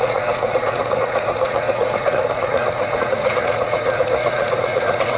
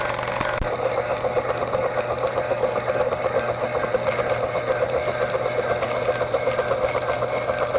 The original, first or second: second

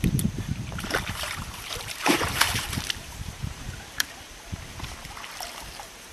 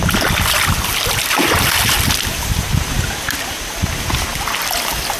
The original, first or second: second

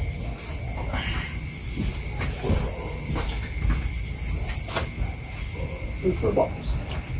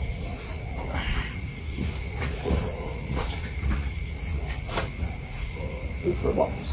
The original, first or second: first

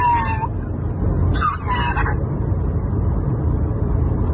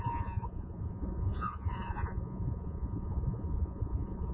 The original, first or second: first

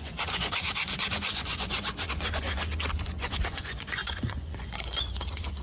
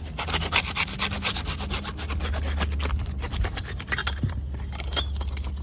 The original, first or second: second